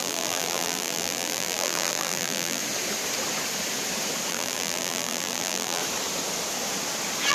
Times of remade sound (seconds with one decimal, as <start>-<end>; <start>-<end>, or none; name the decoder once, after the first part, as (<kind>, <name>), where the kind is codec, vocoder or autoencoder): 0.0-2.6 (vocoder, BigVGAN v2); 4.3-5.8